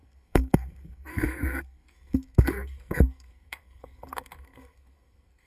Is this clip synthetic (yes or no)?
yes